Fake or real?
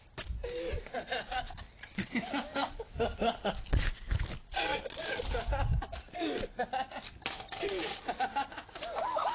real